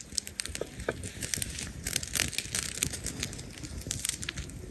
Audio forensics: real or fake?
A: real